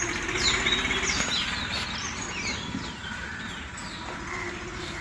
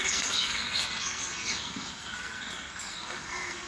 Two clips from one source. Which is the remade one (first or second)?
second